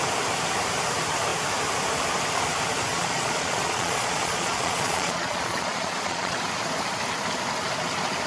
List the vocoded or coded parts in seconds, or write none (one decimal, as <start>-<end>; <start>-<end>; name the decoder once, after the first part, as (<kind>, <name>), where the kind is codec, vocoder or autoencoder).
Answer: 2.9-6.4 (vocoder, Vocos)